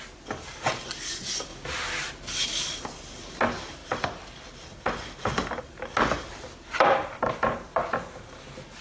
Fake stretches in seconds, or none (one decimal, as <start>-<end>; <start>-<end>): none